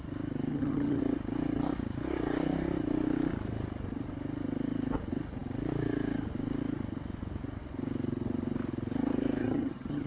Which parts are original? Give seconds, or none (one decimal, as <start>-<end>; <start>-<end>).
0.0-0.5; 1.0-9.4